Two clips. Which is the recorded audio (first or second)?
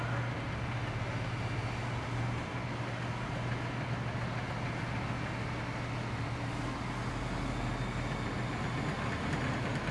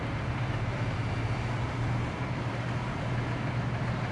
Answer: first